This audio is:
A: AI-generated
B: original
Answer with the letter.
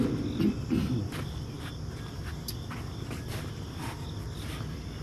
B